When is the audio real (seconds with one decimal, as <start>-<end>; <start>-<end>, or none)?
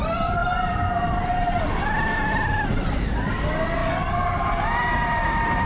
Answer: 0.0-5.7